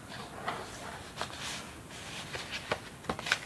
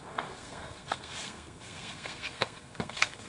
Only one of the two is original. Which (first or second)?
first